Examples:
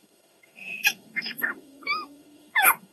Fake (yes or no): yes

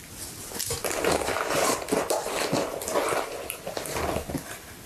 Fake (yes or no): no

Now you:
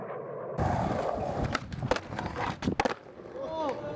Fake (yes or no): no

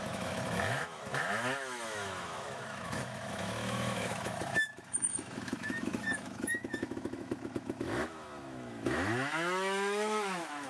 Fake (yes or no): yes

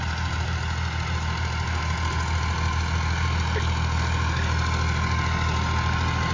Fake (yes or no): no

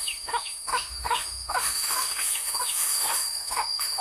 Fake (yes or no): yes